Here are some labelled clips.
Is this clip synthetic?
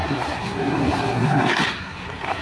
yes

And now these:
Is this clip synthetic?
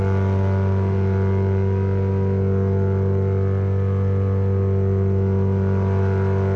no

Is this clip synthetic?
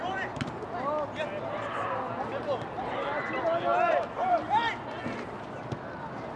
no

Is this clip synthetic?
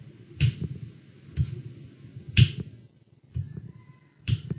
no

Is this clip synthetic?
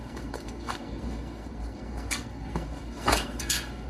yes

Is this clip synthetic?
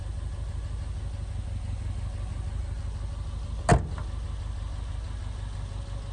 no